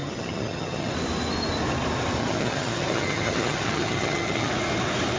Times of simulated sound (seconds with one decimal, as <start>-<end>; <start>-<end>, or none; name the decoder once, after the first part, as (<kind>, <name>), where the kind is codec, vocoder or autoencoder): 0.0-0.9 (vocoder, HiFi-GAN); 2.2-4.5